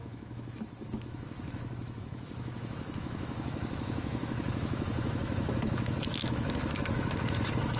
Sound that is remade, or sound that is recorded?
remade